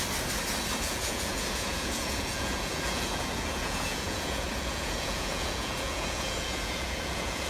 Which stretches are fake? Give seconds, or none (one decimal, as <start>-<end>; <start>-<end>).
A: 0.8-7.5